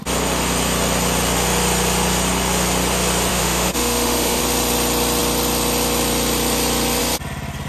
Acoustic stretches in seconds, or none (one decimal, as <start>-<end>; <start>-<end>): 0.0-3.3; 4.4-7.7